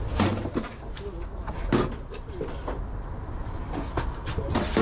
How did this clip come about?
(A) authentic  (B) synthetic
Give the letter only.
A